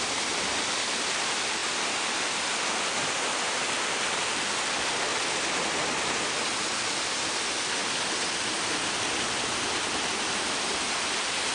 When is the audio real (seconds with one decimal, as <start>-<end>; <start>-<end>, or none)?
7.8-9.1